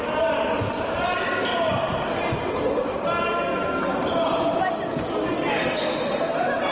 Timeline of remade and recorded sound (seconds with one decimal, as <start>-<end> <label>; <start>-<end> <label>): 0.0-6.7 recorded